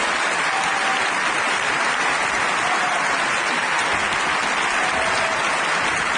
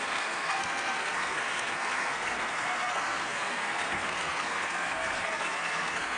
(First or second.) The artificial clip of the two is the second